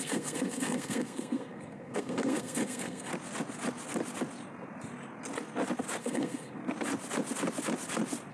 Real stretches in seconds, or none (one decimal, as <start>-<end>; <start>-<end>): 3.1-6.0; 6.6-8.3